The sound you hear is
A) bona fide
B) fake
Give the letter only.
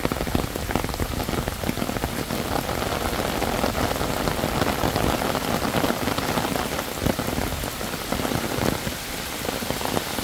A